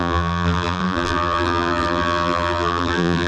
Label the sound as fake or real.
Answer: fake